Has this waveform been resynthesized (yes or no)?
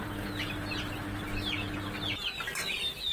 no